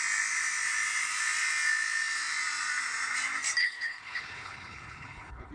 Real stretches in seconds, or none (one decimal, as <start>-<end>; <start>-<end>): 0.0-3.6